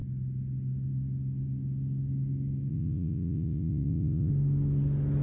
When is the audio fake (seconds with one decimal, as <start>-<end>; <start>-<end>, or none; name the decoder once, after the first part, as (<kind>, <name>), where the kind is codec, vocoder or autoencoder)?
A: 2.7-4.3 (vocoder, Vocos)

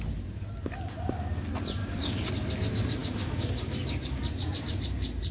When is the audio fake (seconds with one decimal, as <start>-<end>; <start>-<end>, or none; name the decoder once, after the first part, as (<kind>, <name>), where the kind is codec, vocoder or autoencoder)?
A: 1.8-2.3 (codec, DAC); 3.0-4.2

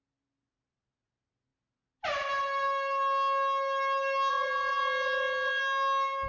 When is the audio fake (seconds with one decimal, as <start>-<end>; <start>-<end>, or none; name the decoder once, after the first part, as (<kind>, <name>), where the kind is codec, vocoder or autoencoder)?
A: 4.3-5.6 (vocoder, WaveNeXt)

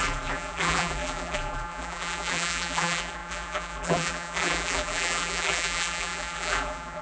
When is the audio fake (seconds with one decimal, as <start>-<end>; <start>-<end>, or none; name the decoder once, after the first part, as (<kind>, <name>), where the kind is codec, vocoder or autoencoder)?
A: 0.0-7.0 (vocoder, BigVGAN v2)

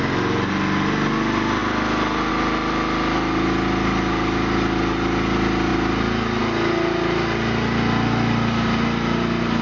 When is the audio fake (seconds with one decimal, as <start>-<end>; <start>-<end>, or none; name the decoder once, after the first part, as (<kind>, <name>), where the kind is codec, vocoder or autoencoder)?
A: none

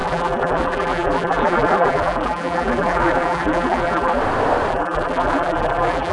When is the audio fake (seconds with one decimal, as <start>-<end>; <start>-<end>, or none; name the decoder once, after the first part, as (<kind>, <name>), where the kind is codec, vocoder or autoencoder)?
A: 0.0-4.2 (vocoder, BigVGAN v2); 4.7-6.1

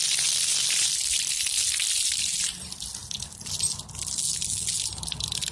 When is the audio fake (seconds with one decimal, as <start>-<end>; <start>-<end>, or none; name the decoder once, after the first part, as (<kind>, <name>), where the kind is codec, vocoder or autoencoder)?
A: none

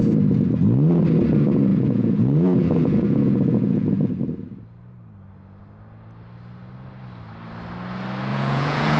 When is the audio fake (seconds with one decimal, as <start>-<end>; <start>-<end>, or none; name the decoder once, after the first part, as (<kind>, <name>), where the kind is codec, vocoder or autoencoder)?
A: 1.7-4.1 (vocoder, Vocos); 8.3-9.0